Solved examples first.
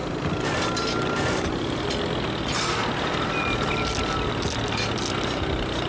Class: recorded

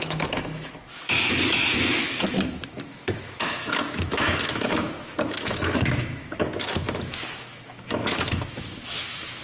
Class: remade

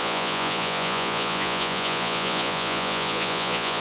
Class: remade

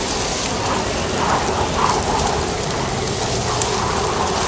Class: recorded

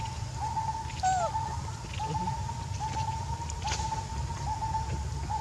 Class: recorded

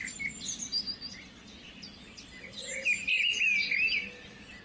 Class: recorded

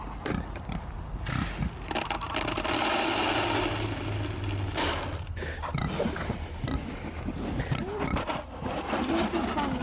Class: recorded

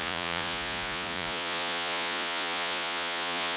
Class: remade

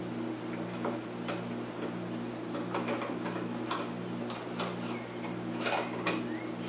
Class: recorded